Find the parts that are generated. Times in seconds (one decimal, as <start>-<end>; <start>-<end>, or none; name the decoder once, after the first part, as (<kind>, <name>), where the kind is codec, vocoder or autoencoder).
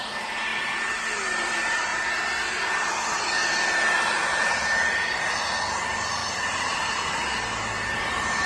0.0-1.9 (vocoder, BigVGAN v2); 2.9-3.4; 4.2-6.2; 7.9-8.5